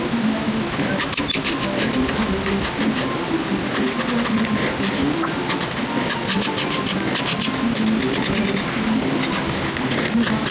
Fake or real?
real